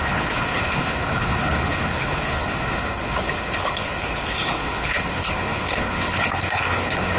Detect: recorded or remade remade